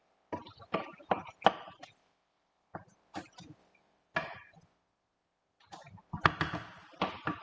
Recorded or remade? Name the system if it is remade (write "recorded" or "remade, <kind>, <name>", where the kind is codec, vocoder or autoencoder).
recorded